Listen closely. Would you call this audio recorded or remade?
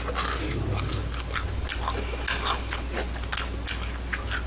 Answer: recorded